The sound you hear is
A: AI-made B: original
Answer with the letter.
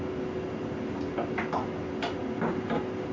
B